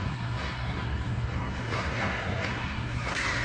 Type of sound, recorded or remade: remade